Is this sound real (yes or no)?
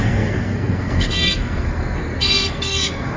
no